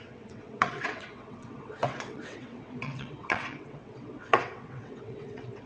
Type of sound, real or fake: fake